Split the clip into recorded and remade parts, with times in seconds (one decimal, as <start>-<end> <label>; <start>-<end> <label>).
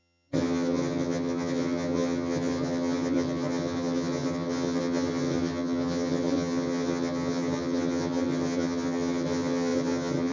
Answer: 0.0-10.3 remade